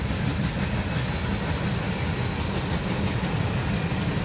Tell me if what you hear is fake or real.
real